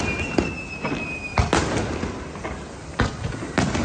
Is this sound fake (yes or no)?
no